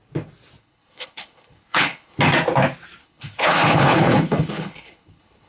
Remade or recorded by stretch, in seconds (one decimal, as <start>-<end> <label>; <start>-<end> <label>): 0.0-0.6 recorded; 0.6-2.2 remade; 2.2-3.0 recorded; 3.0-5.5 remade